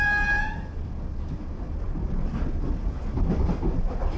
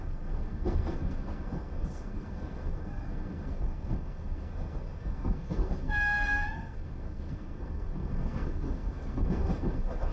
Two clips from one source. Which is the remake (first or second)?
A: second